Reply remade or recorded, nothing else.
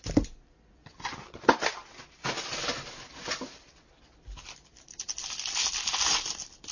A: recorded